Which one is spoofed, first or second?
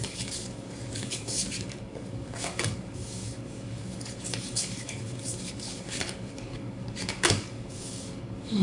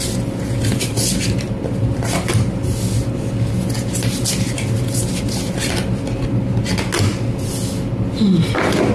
first